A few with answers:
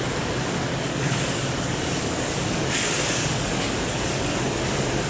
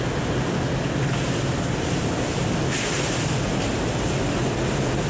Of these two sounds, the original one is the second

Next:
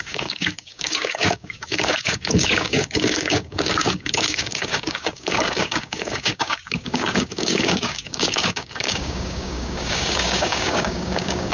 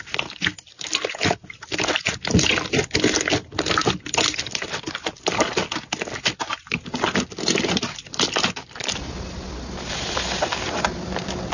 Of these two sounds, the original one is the second